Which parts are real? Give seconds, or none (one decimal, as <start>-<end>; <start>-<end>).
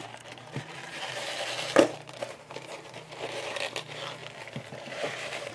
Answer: 4.2-4.7